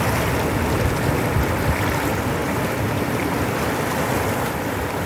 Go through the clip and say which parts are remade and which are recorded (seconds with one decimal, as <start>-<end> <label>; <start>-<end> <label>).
0.0-5.1 recorded